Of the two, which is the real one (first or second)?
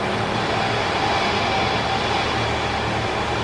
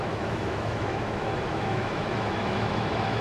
first